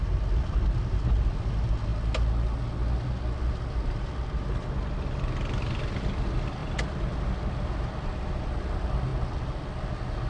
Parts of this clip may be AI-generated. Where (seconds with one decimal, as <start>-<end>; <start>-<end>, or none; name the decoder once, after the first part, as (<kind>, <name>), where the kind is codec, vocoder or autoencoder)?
none